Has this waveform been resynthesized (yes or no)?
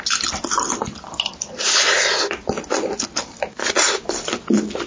no